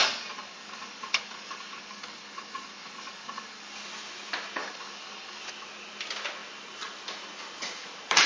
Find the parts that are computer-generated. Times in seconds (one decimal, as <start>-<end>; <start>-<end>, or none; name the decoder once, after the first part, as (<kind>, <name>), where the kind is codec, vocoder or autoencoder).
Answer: 0.0-3.7 (codec, DAC); 4.6-5.4